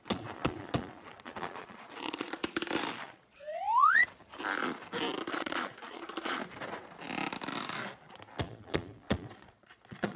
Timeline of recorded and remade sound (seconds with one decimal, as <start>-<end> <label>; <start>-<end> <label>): 0.0-2.4 remade; 2.4-3.0 recorded; 3.0-4.0 remade; 4.0-5.3 recorded; 5.3-6.4 remade; 6.4-8.4 recorded; 8.4-10.2 remade